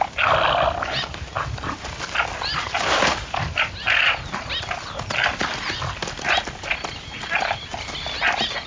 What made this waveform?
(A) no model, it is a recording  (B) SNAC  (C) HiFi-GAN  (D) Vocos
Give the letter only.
A